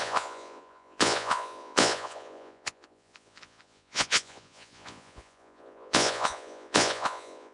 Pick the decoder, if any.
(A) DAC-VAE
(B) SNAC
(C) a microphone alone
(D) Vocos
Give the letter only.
D